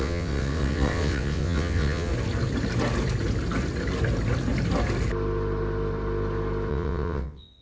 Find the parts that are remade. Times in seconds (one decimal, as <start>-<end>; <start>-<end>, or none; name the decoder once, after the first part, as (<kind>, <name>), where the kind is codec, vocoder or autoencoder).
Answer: 0.0-2.1 (vocoder, WaveNeXt); 6.7-7.6